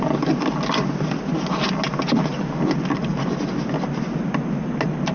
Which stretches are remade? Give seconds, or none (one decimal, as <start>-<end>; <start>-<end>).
none